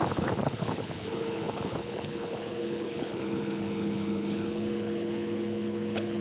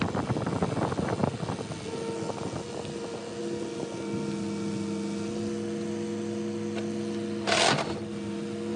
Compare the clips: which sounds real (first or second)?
second